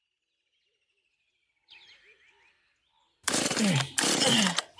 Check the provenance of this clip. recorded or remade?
recorded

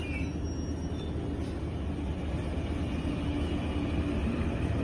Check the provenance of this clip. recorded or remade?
recorded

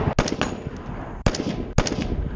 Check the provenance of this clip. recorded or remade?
recorded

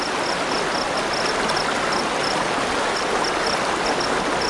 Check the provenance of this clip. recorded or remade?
recorded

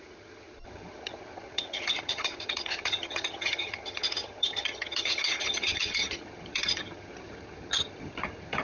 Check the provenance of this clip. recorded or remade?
remade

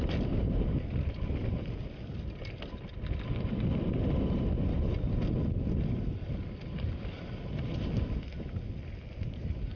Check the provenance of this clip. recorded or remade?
recorded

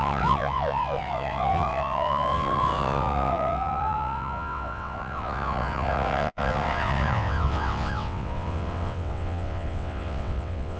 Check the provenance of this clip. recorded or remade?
remade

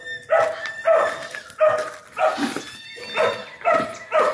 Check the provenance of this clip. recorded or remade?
recorded